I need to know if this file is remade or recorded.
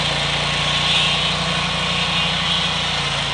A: recorded